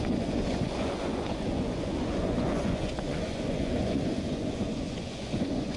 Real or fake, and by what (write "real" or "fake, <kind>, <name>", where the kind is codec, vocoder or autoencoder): fake, vocoder, Vocos